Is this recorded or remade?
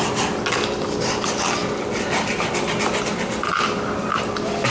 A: recorded